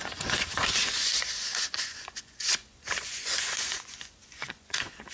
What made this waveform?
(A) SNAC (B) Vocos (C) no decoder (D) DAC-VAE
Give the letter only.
B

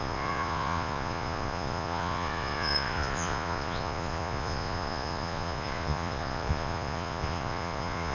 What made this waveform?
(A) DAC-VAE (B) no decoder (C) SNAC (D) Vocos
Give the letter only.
D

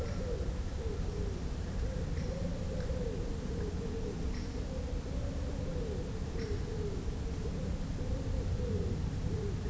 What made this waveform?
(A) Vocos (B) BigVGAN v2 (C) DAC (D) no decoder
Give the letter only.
D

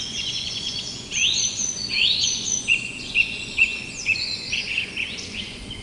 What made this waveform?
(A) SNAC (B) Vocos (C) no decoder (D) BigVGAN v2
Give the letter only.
B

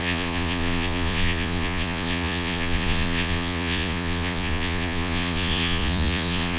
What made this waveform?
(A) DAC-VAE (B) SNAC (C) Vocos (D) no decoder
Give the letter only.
C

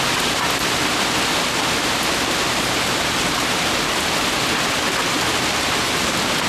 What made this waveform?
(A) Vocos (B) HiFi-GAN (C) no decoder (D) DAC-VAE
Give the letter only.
C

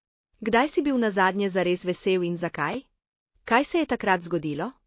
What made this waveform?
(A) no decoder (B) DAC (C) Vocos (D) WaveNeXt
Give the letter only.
A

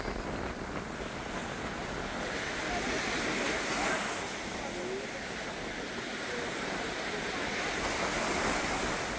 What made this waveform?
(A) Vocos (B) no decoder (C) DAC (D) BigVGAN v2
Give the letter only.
B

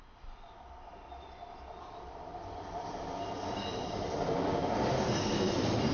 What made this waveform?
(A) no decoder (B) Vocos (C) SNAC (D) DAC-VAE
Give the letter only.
A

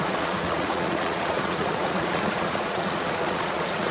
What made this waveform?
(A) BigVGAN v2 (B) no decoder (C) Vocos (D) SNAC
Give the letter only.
C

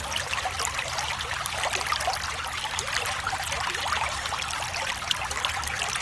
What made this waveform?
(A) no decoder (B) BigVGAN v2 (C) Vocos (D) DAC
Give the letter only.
A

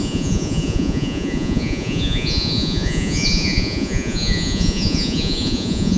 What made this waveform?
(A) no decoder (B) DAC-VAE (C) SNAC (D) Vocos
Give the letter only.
D